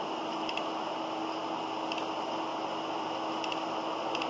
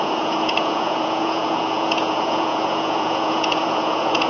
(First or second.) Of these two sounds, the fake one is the second